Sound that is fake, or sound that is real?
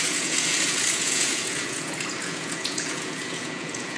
fake